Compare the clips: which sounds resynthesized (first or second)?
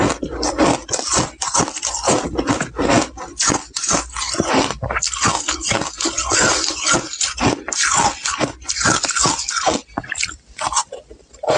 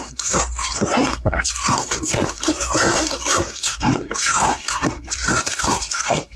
second